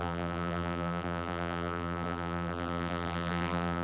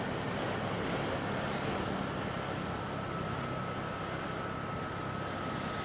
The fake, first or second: first